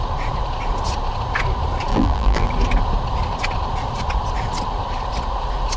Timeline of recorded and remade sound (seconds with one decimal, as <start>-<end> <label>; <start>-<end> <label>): 0.0-1.9 recorded; 1.9-2.5 remade; 2.5-5.8 recorded